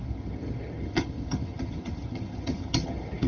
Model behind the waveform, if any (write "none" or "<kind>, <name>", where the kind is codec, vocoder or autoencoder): vocoder, HiFi-GAN